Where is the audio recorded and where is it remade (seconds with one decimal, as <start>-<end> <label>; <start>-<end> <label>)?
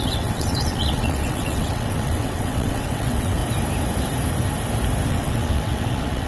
0.0-3.4 remade; 3.4-5.1 recorded; 5.1-6.3 remade